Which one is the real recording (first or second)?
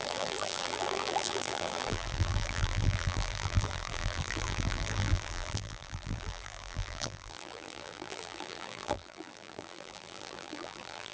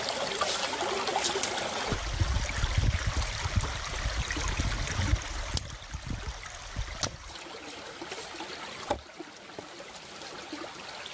second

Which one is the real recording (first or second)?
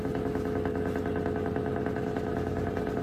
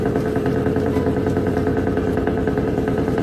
first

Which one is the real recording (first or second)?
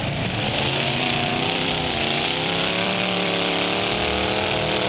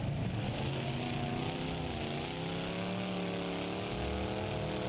second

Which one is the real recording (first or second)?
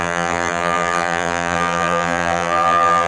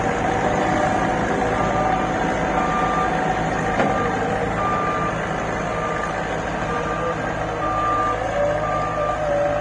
second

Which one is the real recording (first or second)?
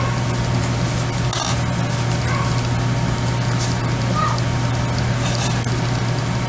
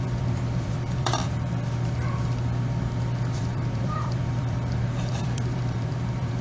first